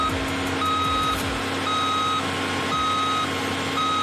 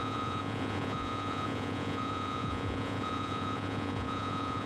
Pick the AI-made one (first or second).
second